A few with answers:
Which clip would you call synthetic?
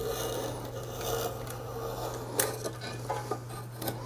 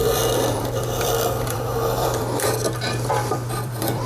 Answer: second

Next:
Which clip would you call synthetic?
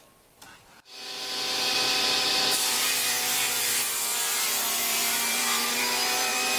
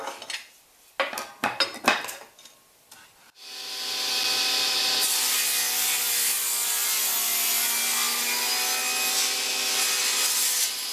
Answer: first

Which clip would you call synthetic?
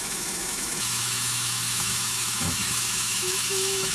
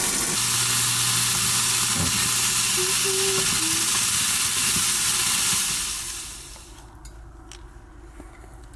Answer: first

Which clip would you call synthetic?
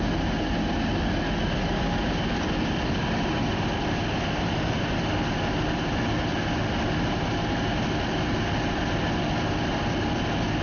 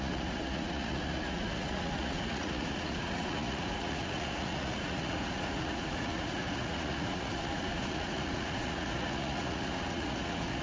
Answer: second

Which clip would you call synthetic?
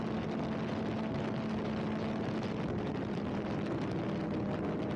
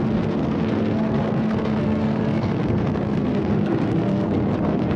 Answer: second